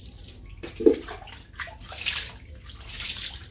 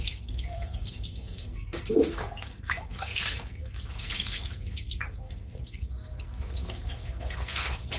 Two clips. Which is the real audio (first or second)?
first